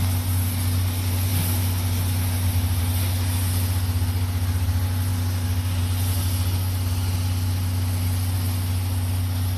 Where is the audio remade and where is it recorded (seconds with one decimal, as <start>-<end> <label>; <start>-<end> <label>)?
0.0-9.6 recorded